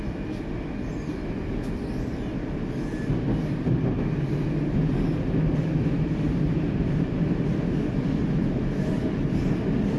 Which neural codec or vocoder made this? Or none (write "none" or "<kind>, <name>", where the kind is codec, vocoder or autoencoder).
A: none